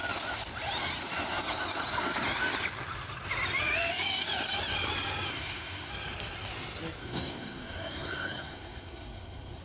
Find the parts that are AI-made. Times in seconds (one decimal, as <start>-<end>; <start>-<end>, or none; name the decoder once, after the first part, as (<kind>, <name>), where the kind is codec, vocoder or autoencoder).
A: 5.3-5.9 (codec, SNAC); 7.0-9.6